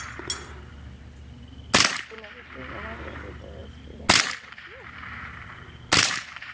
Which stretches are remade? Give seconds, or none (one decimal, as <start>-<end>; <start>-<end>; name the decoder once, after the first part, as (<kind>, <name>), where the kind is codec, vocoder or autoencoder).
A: none